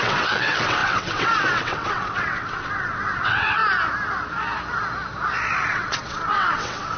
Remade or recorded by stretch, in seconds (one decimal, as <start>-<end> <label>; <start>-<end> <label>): 0.0-3.6 remade; 3.6-5.7 recorded; 5.7-7.0 remade